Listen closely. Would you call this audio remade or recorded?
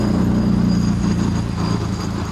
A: recorded